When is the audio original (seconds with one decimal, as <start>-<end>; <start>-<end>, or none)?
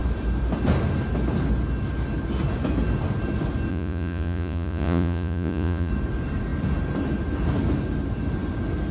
0.0-3.7; 5.9-8.9